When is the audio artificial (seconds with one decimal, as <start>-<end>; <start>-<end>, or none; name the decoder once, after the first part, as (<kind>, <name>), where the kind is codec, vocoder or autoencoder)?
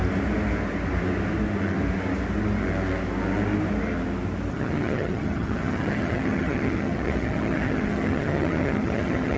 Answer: 4.5-9.4 (vocoder, HiFi-GAN)